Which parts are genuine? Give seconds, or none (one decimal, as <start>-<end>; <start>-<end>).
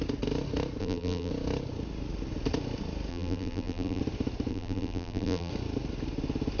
0.0-0.8; 1.3-3.1; 4.0-4.5; 5.5-6.6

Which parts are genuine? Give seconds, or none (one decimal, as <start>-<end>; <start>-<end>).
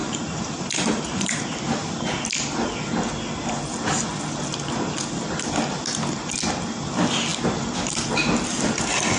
1.4-9.2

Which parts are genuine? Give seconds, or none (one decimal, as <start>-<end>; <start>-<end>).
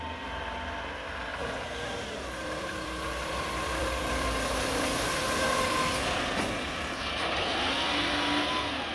0.0-1.3; 6.4-8.9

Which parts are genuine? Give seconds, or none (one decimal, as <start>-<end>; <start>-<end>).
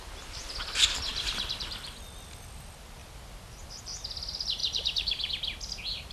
0.0-4.6; 5.3-6.1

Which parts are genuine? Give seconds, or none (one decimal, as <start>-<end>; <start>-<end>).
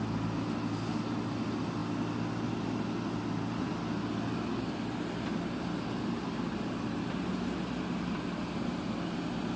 0.0-9.6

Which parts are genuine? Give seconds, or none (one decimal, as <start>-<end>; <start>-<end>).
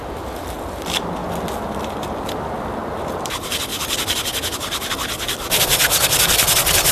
0.0-6.9